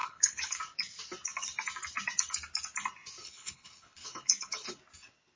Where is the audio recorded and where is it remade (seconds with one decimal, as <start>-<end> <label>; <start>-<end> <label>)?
0.0-0.6 remade; 0.6-3.2 recorded; 3.2-4.8 remade; 4.8-5.4 recorded